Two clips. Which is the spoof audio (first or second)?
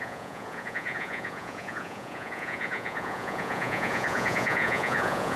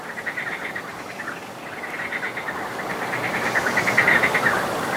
first